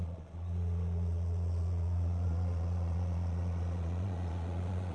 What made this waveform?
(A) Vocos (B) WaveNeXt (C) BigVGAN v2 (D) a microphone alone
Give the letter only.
A